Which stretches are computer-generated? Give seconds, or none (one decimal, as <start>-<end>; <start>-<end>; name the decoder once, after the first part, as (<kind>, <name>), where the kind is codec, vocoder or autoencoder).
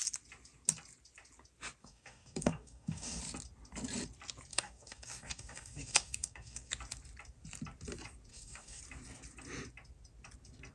1.8-3.2 (codec, DAC); 4.5-6.7; 8.3-8.8